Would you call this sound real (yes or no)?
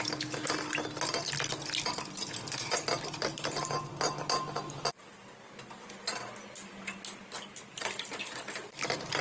yes